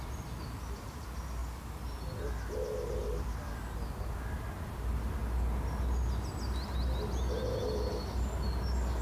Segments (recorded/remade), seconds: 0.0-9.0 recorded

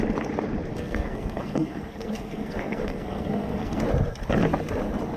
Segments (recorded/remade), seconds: 0.0-0.7 recorded; 0.7-3.8 remade; 3.8-5.2 recorded

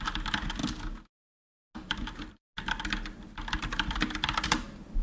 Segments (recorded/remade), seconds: 0.0-5.0 recorded

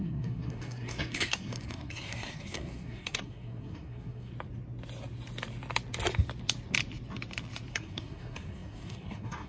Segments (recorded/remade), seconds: 0.0-4.3 remade; 4.3-7.7 recorded; 7.7-9.5 remade